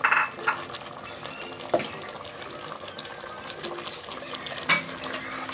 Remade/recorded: recorded